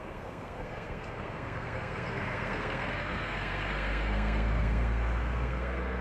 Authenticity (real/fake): fake